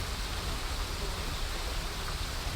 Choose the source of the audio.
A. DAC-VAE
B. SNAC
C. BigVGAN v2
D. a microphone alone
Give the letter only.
D